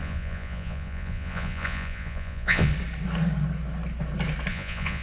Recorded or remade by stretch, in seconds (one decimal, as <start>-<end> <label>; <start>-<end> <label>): 0.0-2.7 remade; 2.7-4.5 recorded; 4.5-5.0 remade